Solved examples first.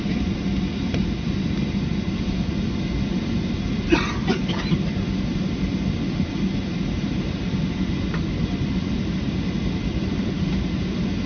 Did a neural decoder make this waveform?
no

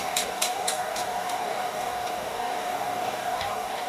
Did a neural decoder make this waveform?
yes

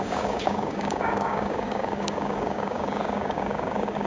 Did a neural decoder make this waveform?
yes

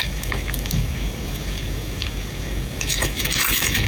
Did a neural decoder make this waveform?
yes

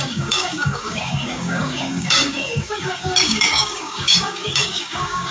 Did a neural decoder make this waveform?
yes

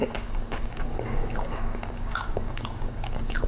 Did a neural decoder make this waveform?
yes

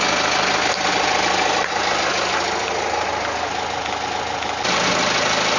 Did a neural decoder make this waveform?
no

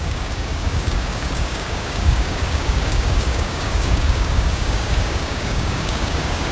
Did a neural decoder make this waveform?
yes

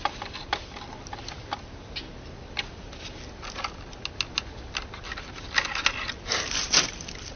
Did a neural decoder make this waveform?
no